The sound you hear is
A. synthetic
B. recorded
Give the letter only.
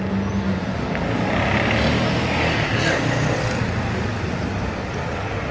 B